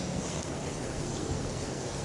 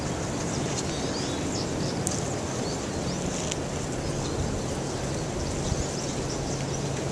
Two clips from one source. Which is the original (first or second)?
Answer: second